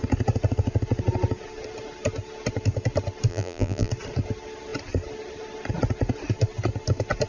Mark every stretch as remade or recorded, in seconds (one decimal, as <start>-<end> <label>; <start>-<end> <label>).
0.0-3.3 recorded; 3.3-3.9 remade; 3.9-7.3 recorded